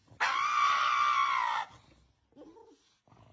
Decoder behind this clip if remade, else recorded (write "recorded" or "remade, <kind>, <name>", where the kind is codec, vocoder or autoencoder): recorded